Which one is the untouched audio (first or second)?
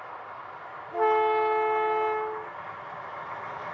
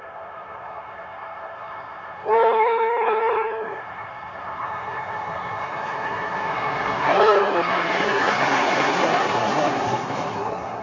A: first